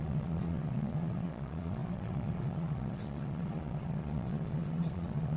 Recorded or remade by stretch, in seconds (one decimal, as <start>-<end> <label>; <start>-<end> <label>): 0.0-5.4 remade